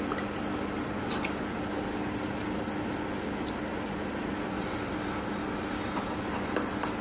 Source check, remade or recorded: recorded